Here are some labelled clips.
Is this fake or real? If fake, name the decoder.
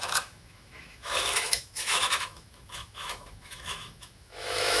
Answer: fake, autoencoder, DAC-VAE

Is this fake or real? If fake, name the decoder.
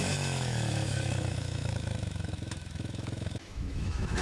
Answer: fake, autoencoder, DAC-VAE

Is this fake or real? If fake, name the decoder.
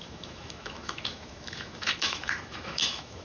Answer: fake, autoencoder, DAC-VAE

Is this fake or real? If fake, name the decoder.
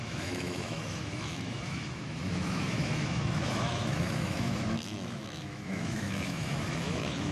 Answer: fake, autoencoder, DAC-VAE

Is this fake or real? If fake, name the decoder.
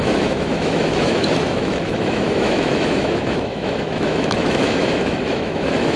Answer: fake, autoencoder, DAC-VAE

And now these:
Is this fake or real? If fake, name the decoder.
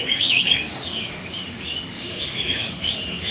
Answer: fake, autoencoder, DAC-VAE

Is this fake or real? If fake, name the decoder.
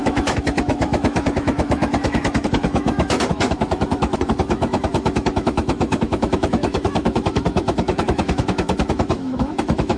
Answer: fake, autoencoder, DAC-VAE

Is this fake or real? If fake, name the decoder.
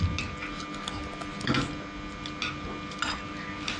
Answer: real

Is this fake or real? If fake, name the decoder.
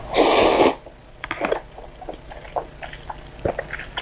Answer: real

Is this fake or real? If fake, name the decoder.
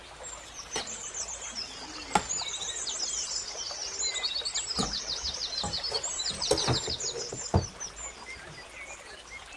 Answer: real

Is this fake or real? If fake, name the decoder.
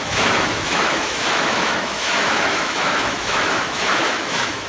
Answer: fake, autoencoder, DAC-VAE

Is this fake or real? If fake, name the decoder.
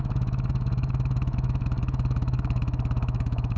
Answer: fake, autoencoder, DAC-VAE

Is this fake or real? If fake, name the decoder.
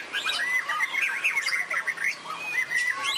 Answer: real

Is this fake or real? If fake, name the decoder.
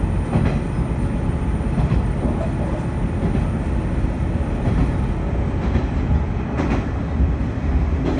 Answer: real